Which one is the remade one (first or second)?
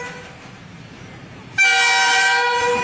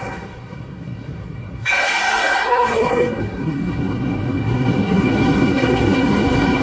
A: second